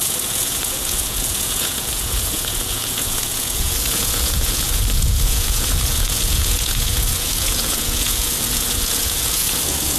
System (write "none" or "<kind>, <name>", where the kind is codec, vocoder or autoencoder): vocoder, Vocos